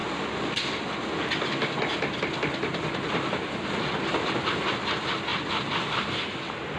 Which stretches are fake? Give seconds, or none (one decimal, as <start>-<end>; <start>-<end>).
none